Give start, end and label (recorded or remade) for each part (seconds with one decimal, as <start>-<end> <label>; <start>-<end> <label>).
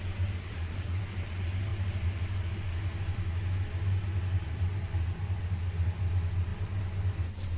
0.0-0.4 recorded; 0.4-1.0 remade; 1.0-7.6 recorded